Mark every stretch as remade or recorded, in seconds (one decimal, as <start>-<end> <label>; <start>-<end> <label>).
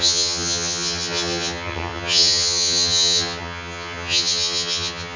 0.0-5.2 remade